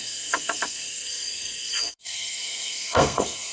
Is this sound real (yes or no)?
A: no